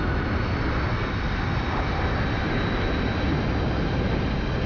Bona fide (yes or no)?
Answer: yes